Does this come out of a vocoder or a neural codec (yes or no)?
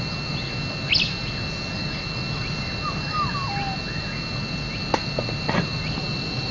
no